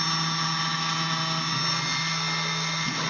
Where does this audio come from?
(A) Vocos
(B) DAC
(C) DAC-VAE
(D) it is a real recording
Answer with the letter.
D